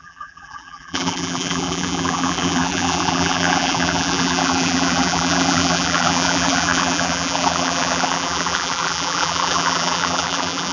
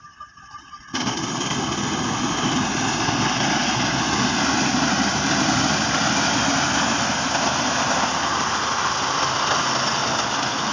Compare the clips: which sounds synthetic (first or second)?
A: first